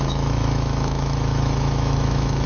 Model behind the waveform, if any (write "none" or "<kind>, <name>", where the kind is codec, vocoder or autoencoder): autoencoder, DAC-VAE